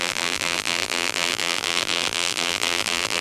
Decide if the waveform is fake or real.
fake